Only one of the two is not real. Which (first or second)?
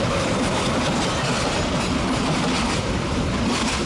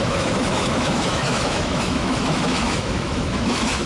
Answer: second